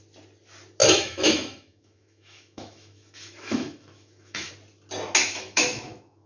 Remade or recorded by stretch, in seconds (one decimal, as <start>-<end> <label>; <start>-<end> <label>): 0.0-0.8 recorded; 0.8-4.5 remade; 4.5-5.2 recorded; 5.2-6.3 remade